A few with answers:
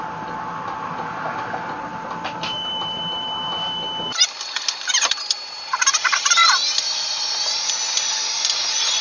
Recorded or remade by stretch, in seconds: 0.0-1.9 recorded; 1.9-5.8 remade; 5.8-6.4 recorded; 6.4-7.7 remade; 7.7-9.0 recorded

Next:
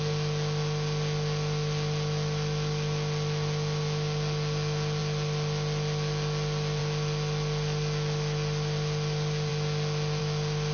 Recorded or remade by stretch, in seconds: 0.0-10.7 recorded

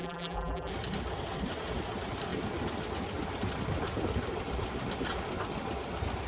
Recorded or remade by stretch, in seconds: 0.0-0.7 remade; 0.7-6.3 recorded

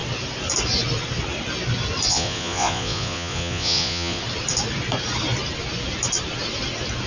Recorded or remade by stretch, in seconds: 0.0-2.1 recorded; 2.1-4.2 remade; 4.2-7.1 recorded

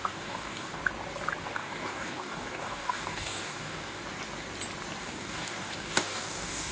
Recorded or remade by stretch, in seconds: 0.0-0.8 remade; 0.8-1.4 recorded; 1.4-4.0 remade; 4.0-5.0 recorded; 5.0-6.7 remade

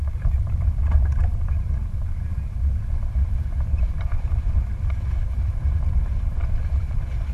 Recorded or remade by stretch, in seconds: 0.0-1.8 recorded; 1.8-5.9 remade; 5.9-7.3 recorded